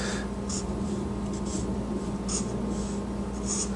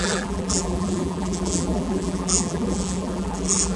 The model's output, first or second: second